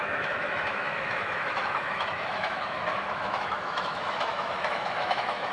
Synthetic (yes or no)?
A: yes